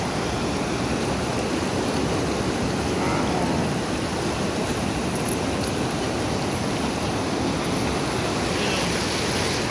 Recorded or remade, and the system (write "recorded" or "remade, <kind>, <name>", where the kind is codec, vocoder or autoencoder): recorded